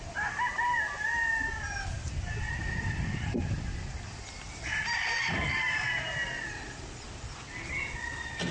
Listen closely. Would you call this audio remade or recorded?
remade